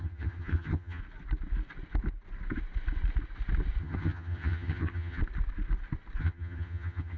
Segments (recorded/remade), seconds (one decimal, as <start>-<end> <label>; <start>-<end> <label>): 0.0-1.0 remade; 1.0-3.8 recorded; 3.8-5.2 remade; 5.2-6.2 recorded; 6.2-7.2 remade